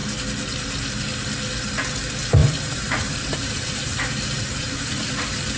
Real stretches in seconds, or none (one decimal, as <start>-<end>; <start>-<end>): 0.0-2.4

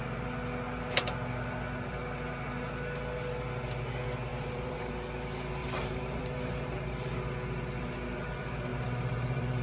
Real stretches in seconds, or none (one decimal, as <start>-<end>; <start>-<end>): 0.0-4.3; 4.9-5.6; 6.2-8.7

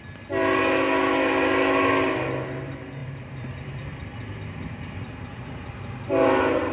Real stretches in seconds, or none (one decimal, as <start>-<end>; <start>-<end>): 0.0-3.0; 5.7-6.7

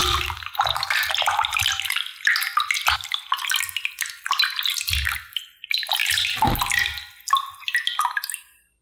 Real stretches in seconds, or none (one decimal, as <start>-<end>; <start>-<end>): 1.4-6.0; 6.6-8.8

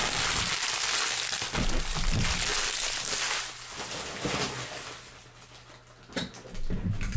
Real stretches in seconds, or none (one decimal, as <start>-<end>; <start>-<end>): 2.5-6.8

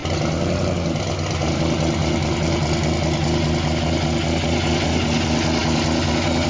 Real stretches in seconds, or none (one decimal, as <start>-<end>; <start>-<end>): 0.0-6.5

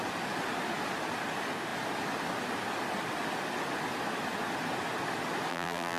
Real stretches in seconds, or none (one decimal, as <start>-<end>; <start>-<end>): 0.0-5.5